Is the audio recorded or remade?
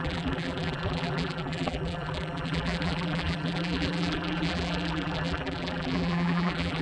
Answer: remade